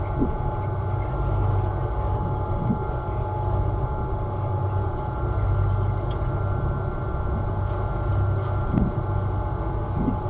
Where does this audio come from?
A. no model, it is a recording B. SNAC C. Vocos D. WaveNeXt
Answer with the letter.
A